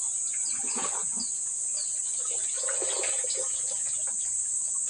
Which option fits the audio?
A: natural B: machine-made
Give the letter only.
A